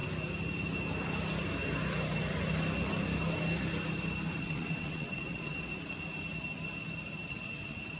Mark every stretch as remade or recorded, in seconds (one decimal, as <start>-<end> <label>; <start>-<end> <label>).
0.0-4.4 recorded; 4.4-5.7 remade; 5.7-7.3 recorded; 7.3-8.0 remade